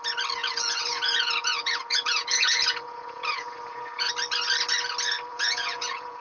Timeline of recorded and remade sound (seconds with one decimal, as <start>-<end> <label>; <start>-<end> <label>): 0.0-0.4 recorded; 0.4-4.1 remade; 4.1-5.3 recorded; 5.3-6.2 remade

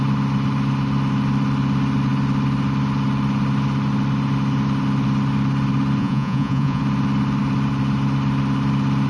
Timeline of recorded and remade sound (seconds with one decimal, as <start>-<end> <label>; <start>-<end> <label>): 0.0-6.0 recorded; 6.0-6.8 remade; 6.8-9.1 recorded

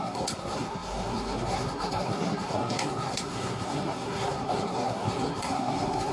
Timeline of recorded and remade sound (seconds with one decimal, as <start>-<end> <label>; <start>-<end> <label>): 0.0-6.1 remade

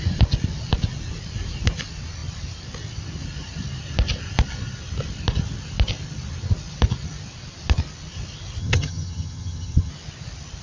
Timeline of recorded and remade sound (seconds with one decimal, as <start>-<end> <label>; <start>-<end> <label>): 0.0-8.6 recorded; 8.6-9.9 remade; 9.9-10.6 recorded

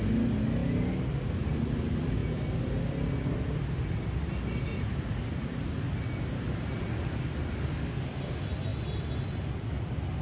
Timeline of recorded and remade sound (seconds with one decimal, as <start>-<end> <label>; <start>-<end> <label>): 0.0-10.2 recorded

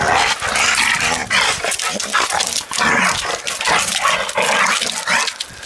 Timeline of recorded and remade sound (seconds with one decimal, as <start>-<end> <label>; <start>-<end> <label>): 0.0-5.7 recorded

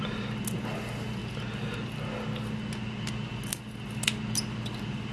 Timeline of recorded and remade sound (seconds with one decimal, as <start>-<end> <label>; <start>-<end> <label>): 0.0-5.1 recorded